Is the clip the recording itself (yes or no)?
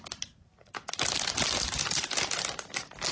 yes